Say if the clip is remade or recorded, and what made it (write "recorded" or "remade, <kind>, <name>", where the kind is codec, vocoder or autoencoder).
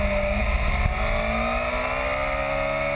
recorded